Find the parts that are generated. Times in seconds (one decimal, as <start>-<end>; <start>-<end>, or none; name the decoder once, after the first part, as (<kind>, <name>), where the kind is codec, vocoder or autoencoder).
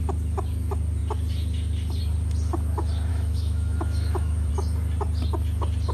3.1-4.5 (autoencoder, DAC-VAE)